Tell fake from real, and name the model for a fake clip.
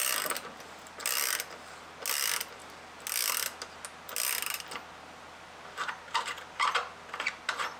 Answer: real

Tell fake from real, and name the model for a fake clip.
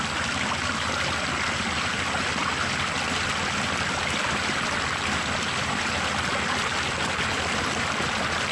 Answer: real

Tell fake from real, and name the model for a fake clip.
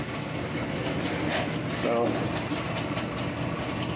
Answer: real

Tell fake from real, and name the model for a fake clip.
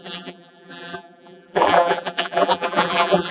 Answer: fake, vocoder, BigVGAN v2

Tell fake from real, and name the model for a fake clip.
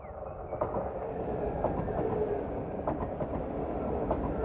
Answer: fake, vocoder, BigVGAN v2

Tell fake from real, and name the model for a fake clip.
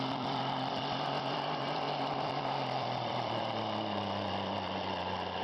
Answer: fake, vocoder, BigVGAN v2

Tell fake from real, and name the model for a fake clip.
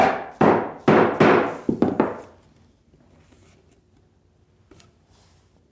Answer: real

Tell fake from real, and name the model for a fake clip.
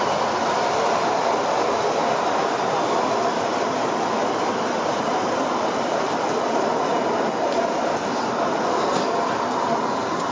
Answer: fake, vocoder, BigVGAN v2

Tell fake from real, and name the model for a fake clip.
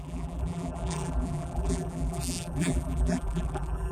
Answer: fake, vocoder, BigVGAN v2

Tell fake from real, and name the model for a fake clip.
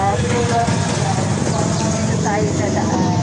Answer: real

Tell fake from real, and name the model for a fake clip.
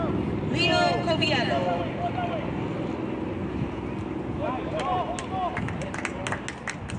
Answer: real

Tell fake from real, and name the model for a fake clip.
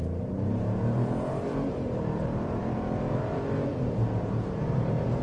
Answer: fake, vocoder, BigVGAN v2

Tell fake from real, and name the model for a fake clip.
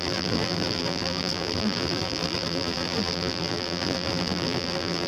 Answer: fake, vocoder, BigVGAN v2